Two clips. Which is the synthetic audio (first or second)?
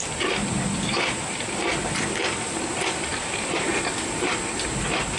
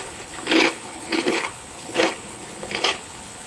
second